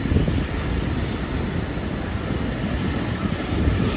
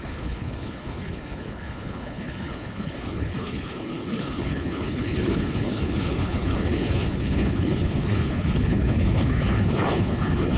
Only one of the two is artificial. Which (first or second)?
second